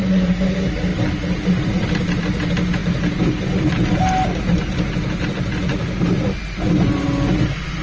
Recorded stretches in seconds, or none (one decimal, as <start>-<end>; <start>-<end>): 0.0-7.8